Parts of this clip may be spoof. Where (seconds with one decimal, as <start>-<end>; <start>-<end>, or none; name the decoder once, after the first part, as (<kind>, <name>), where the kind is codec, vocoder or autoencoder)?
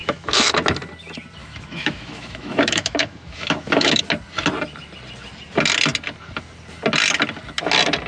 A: 0.0-0.5 (autoencoder, DAC-VAE); 1.4-4.0